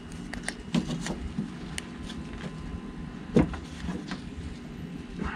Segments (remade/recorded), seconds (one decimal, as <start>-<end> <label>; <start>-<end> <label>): 0.0-5.4 recorded